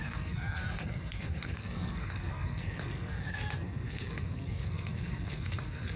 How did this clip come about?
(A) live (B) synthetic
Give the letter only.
B